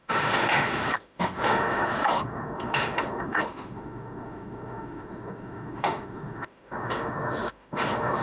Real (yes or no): no